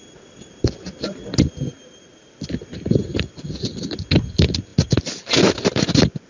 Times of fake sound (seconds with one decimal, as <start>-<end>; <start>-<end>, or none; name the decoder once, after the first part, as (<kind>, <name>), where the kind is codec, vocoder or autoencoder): none